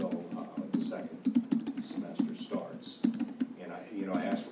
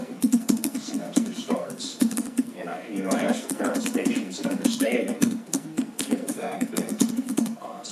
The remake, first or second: second